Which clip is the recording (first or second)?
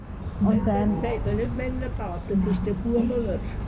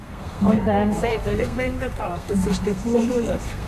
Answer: first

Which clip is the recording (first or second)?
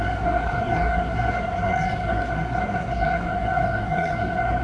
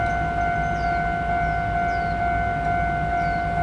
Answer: second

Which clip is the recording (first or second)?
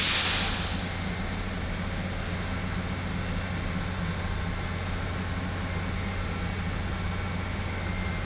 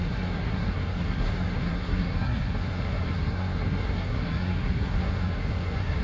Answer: first